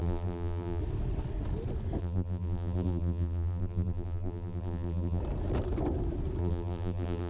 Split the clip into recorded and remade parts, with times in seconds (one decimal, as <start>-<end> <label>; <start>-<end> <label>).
0.0-0.8 remade; 0.8-2.0 recorded; 2.0-5.2 remade; 5.2-6.4 recorded; 6.4-7.3 remade